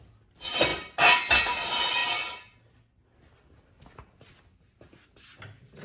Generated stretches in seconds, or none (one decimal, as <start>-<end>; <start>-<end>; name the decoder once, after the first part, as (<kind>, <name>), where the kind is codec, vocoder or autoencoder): none